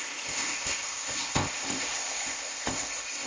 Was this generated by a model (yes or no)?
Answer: yes